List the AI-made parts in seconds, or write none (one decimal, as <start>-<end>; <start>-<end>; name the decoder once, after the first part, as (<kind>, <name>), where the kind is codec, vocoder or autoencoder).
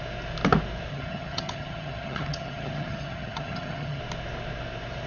0.9-4.0 (vocoder, HiFi-GAN)